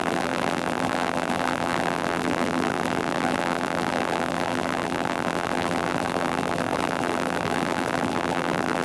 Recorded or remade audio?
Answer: remade